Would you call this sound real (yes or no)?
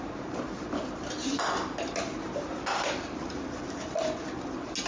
yes